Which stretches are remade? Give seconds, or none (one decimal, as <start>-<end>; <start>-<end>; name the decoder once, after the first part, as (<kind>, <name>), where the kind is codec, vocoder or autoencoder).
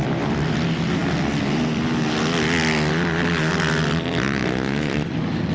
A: 0.0-1.0 (vocoder, BigVGAN v2); 3.5-4.4; 4.9-5.5